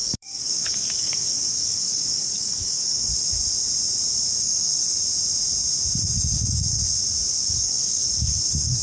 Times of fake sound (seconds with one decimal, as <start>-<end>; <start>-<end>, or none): 0.0-3.1; 4.4-4.9; 6.0-6.8; 7.5-8.8